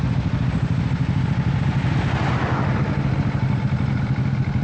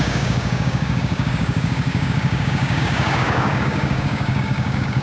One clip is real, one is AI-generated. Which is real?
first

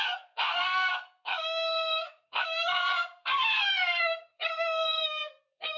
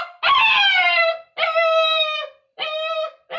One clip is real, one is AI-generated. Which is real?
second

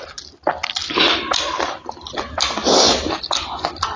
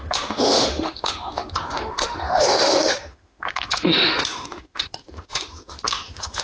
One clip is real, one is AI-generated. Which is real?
first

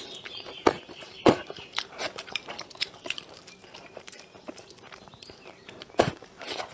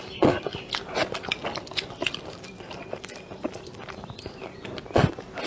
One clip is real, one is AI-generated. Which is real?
second